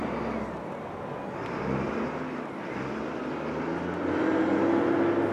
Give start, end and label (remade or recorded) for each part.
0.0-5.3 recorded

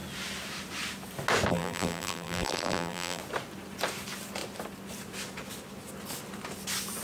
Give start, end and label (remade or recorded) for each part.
0.0-1.5 recorded; 1.5-3.2 remade; 3.2-7.0 recorded

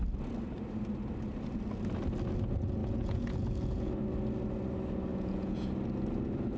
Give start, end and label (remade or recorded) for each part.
0.0-2.8 recorded; 2.8-3.9 remade; 3.9-5.1 recorded; 5.1-5.7 remade; 5.7-6.6 recorded

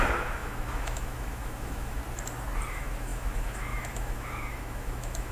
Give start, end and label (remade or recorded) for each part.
0.0-2.0 remade; 2.0-2.7 recorded; 2.7-5.3 remade